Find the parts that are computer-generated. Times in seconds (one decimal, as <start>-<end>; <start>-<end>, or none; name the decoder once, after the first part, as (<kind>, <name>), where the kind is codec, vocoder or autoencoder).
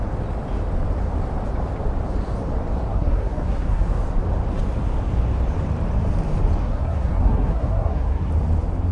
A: 2.9-4.0 (codec, SNAC); 6.6-8.3